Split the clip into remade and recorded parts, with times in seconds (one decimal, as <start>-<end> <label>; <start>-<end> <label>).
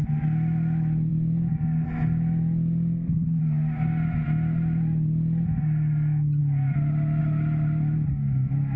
0.0-8.8 recorded